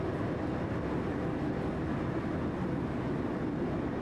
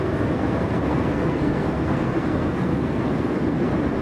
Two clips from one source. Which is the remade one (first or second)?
second